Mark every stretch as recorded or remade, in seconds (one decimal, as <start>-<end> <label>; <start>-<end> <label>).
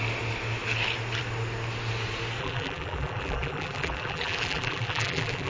0.0-2.4 recorded; 2.4-5.5 remade